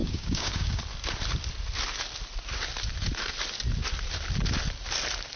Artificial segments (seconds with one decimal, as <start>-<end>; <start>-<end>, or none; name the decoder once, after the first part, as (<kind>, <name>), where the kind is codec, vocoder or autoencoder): 0.0-0.8 (codec, DAC)